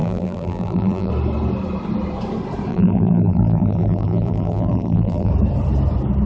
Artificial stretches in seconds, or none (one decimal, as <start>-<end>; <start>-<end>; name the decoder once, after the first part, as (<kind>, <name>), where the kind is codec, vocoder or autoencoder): 0.0-1.1 (vocoder, BigVGAN v2); 2.7-5.3